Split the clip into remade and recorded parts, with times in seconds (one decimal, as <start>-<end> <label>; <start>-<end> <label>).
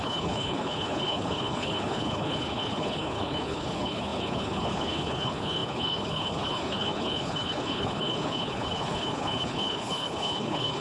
0.0-10.8 remade